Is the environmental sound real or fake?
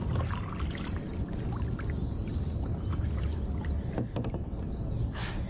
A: real